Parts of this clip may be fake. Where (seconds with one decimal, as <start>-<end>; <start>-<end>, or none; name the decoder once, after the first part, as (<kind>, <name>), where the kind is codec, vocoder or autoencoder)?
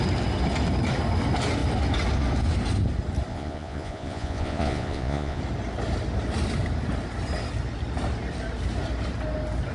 3.3-5.4 (vocoder, Vocos)